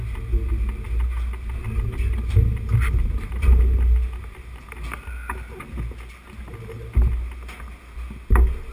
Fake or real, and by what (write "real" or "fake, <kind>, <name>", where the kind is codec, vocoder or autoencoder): real